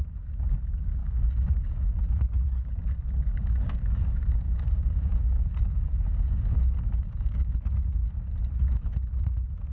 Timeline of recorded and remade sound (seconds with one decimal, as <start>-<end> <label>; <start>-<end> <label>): 0.0-1.0 recorded; 1.0-2.0 remade; 2.0-3.3 recorded; 3.3-7.5 remade; 7.5-9.7 recorded